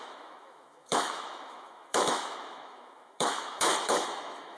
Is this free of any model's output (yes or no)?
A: no